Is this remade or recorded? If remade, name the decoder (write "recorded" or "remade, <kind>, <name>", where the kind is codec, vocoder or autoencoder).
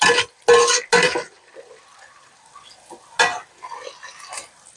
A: recorded